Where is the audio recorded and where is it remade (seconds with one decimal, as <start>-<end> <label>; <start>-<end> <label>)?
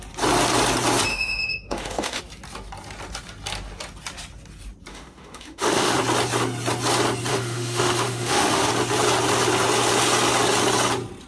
0.0-1.1 recorded; 1.1-2.2 remade; 2.2-4.9 recorded; 4.9-6.0 remade; 6.0-7.3 recorded; 7.3-8.7 remade; 8.7-11.3 recorded